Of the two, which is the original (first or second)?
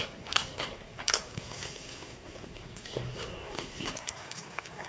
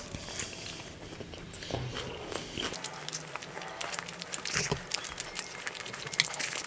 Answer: second